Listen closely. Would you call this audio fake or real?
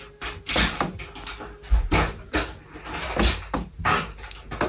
real